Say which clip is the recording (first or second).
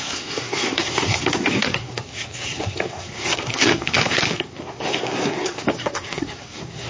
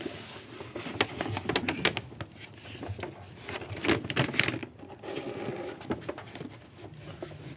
second